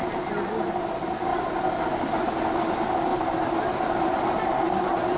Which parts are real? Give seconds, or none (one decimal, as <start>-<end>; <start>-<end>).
0.0-5.2